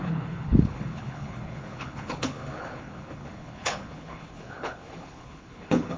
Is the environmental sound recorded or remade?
remade